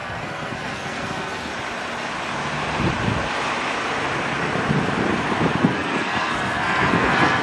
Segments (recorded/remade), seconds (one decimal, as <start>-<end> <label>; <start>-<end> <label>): 0.0-1.5 remade; 1.5-5.6 recorded; 5.6-7.4 remade